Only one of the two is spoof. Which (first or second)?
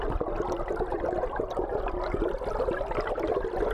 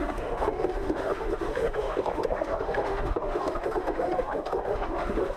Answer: second